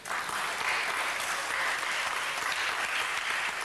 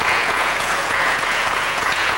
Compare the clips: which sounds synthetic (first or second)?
second